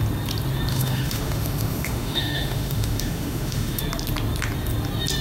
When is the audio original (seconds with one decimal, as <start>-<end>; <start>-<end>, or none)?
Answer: 0.0-0.7; 3.8-5.2